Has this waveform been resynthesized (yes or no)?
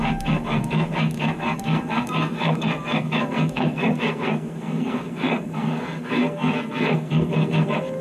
yes